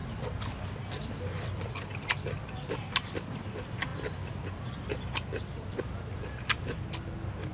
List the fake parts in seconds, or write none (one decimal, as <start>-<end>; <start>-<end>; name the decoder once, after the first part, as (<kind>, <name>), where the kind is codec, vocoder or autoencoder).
none